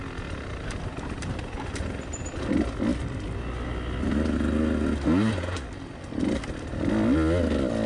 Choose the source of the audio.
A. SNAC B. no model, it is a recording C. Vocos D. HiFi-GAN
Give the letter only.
B